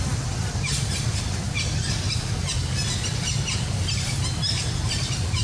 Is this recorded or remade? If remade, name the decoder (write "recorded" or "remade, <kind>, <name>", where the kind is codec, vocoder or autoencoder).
recorded